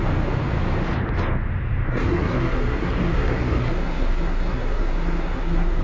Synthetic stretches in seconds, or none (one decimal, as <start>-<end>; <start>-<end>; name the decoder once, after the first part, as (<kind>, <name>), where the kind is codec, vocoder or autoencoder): 1.9-5.8 (codec, SNAC)